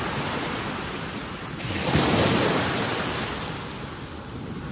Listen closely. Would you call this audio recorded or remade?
recorded